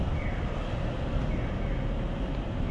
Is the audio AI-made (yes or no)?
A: no